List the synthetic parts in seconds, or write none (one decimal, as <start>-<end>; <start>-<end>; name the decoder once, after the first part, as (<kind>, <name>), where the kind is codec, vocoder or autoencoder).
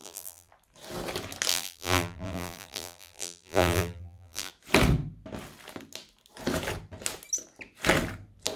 0.0-0.5 (vocoder, BigVGAN v2); 1.5-4.5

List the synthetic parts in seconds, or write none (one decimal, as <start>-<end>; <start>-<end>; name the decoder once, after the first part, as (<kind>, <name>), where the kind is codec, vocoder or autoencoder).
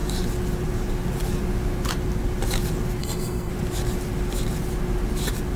3.0-3.5 (codec, SNAC)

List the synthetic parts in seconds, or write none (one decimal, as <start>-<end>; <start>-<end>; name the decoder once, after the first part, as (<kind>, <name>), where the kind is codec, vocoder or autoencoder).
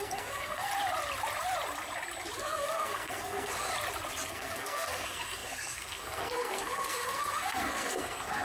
0.0-0.7 (codec, SNAC); 2.4-3.7; 4.3-8.4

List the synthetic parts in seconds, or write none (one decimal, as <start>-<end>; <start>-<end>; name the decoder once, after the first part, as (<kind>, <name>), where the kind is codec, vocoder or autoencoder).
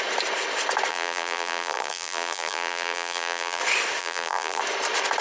0.9-3.6 (vocoder, BigVGAN v2); 4.0-4.6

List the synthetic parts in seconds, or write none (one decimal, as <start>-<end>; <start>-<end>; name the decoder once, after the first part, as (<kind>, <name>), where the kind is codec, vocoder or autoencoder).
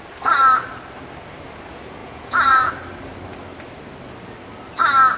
2.0-2.7 (vocoder, Vocos)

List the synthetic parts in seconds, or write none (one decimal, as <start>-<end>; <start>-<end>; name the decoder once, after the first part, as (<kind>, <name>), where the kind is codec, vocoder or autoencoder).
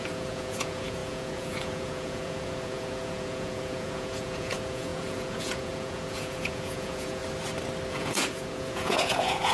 0.0-7.2 (vocoder, Vocos); 7.9-9.5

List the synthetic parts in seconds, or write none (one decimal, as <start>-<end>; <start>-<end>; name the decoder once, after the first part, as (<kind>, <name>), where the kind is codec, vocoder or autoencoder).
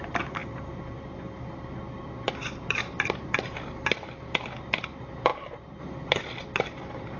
0.0-0.4 (vocoder, BigVGAN v2); 2.3-5.3; 5.8-7.2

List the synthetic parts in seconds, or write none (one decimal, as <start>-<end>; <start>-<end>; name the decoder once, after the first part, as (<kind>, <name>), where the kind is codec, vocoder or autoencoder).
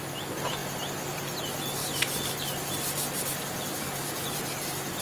1.8-5.0 (vocoder, BigVGAN v2)